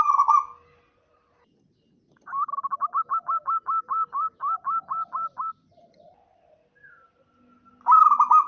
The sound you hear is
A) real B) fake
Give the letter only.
A